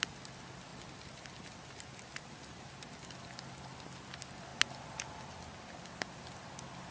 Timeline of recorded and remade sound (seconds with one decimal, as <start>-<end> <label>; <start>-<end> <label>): 0.0-6.9 recorded